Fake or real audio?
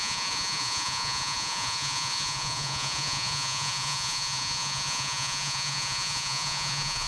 fake